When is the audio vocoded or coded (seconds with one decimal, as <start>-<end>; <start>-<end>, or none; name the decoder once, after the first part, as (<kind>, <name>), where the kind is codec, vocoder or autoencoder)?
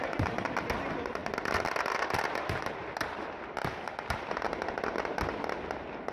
none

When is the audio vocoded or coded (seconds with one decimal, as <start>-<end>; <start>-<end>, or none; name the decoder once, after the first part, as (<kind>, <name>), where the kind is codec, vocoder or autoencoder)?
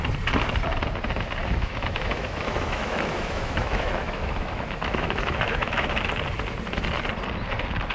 1.4-6.1 (autoencoder, DAC-VAE)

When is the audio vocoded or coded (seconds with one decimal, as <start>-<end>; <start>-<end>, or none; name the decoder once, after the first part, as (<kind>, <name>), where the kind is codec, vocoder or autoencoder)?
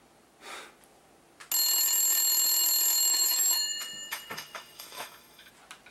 3.1-5.5 (autoencoder, DAC-VAE)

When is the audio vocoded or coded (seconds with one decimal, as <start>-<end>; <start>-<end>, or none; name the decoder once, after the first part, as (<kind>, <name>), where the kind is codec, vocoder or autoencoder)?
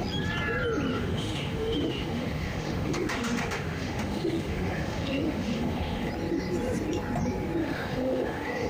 0.9-6.1 (autoencoder, DAC-VAE); 7.6-8.7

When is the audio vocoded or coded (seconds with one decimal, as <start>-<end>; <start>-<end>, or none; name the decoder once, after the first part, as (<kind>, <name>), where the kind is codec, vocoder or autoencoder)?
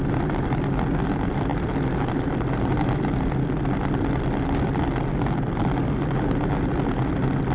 none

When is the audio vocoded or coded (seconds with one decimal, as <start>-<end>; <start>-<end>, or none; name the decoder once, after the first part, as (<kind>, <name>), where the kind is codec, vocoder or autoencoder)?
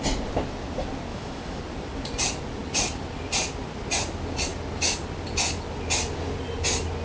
1.1-1.6 (autoencoder, DAC-VAE)